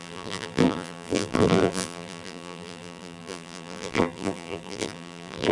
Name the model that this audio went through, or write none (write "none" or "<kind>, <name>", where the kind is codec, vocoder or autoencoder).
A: vocoder, BigVGAN v2